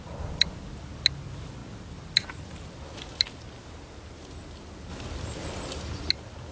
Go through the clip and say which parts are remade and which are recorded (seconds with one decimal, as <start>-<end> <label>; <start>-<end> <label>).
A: 0.0-6.5 recorded